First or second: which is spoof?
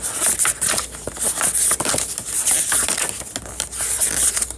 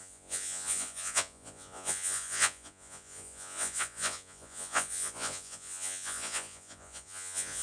second